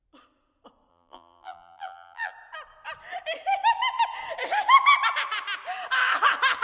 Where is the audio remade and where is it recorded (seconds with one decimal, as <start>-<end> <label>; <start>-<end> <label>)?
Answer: 0.0-0.9 recorded; 0.9-2.3 remade; 2.3-6.6 recorded